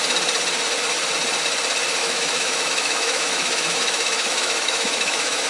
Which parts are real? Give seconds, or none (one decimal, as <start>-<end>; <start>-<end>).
0.0-2.0